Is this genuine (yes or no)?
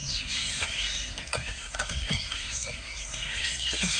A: no